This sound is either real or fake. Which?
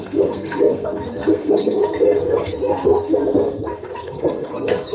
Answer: fake